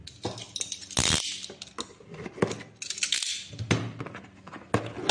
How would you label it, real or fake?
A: real